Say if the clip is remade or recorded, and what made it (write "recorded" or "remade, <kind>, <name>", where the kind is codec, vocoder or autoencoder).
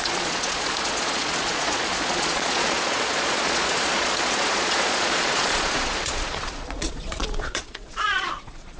remade, vocoder, Vocos